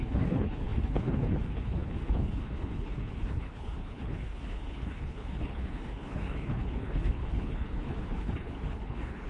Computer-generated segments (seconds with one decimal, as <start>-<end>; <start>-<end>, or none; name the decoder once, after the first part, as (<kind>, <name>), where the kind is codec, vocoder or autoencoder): 0.0-9.3 (codec, HILCodec)